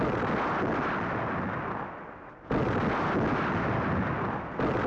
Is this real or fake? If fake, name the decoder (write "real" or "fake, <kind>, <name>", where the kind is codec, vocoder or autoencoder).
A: real